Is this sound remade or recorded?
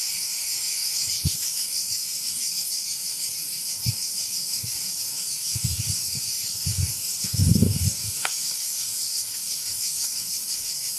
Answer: remade